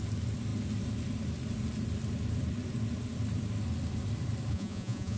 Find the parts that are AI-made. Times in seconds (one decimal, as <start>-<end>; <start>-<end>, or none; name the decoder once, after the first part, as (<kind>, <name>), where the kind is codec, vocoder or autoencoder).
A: 4.5-5.2 (vocoder, Vocos)